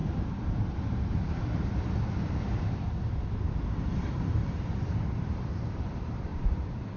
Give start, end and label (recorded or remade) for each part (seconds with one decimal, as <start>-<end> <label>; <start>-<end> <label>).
0.0-7.0 remade